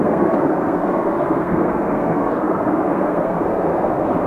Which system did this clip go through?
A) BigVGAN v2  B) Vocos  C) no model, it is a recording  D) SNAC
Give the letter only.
D